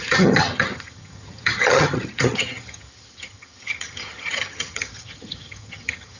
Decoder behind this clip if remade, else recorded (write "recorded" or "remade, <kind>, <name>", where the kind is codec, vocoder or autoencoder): remade, vocoder, HiFi-GAN